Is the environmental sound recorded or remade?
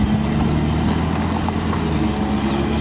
recorded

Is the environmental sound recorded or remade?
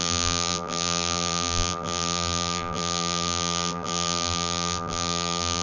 remade